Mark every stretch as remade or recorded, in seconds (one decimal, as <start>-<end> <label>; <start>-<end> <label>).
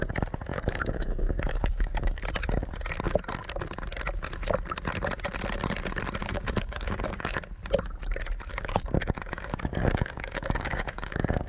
0.0-0.5 recorded; 0.5-2.2 remade; 2.2-6.2 recorded; 6.2-7.4 remade; 7.4-8.5 recorded; 8.5-11.5 remade